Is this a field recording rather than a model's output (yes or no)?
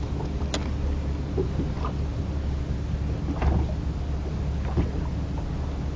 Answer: yes